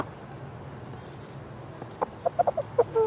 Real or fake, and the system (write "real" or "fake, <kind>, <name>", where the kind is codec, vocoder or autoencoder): real